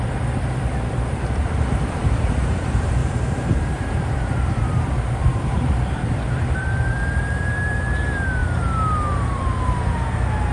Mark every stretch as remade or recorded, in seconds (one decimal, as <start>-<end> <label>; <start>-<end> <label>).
0.0-8.4 remade; 8.4-9.2 recorded; 9.2-10.5 remade